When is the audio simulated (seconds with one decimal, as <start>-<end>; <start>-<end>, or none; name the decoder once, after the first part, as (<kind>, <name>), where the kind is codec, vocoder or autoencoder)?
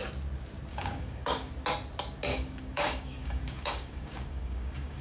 0.7-1.5 (codec, DAC); 2.3-5.0